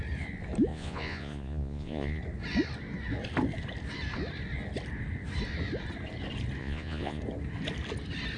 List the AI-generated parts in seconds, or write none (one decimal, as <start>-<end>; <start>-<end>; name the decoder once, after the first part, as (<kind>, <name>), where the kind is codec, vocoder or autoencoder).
0.7-2.2 (vocoder, Vocos); 6.6-7.2